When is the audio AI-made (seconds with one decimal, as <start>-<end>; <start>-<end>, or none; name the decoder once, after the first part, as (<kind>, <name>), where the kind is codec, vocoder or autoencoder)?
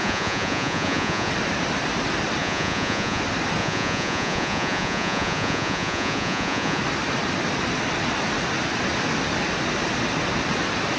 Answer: 0.0-1.3 (vocoder, Vocos); 2.4-3.2; 3.6-6.8